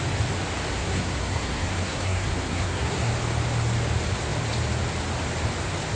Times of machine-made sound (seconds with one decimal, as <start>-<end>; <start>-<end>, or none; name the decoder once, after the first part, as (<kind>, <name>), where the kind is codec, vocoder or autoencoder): 0.7-3.1 (codec, SNAC)